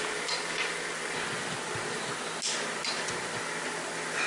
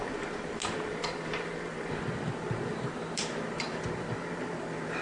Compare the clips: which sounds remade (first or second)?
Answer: second